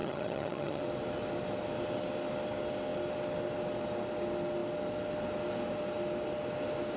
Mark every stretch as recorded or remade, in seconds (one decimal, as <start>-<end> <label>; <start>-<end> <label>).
0.0-0.8 remade; 0.8-7.0 recorded